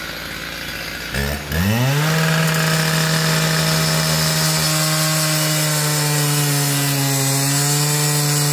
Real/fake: real